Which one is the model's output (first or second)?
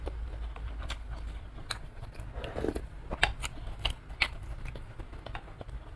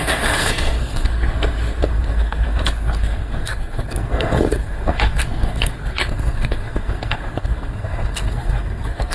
second